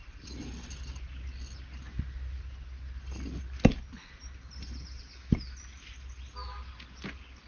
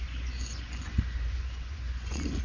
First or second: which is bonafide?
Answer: first